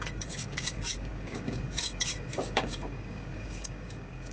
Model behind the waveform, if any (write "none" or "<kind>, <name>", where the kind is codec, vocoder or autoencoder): codec, DAC